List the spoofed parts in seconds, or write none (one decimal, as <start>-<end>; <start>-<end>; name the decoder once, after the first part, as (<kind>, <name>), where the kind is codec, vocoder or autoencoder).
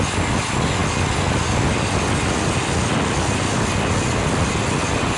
none